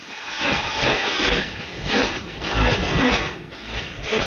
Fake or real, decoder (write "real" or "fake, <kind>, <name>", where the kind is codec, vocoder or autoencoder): fake, codec, SNAC